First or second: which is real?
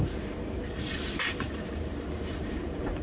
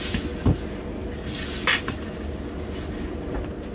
second